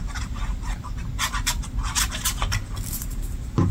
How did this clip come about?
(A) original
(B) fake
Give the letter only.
A